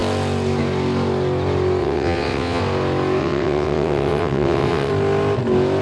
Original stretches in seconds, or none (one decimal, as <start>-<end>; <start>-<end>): 0.0-1.8; 2.6-3.2; 4.9-5.8